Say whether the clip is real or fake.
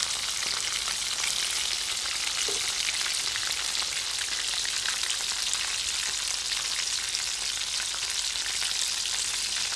real